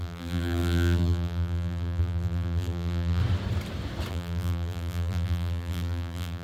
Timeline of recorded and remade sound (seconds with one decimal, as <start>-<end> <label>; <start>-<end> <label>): 0.0-3.2 remade; 3.2-4.1 recorded; 4.1-6.4 remade